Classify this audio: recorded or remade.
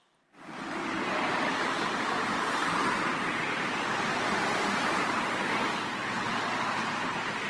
recorded